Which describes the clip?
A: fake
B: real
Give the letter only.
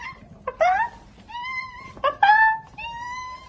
A